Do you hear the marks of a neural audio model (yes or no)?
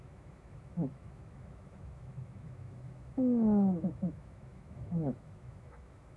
yes